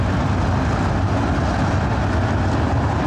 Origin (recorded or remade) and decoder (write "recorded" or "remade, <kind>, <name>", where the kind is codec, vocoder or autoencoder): recorded